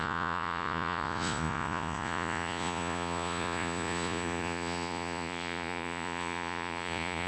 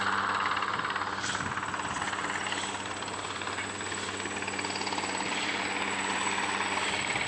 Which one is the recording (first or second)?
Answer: second